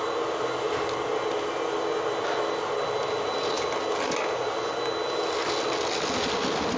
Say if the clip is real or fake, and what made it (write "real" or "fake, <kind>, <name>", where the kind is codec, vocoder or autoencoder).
real